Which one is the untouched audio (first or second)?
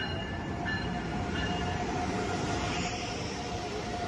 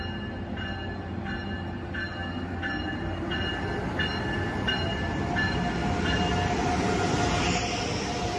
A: second